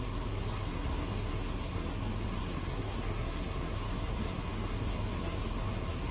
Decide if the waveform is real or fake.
fake